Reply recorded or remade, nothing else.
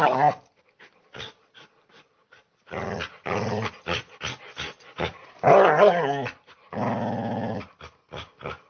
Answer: recorded